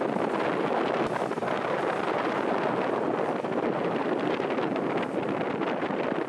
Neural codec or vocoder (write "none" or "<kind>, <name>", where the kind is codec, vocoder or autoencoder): none